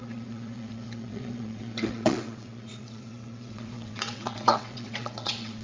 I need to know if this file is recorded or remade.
remade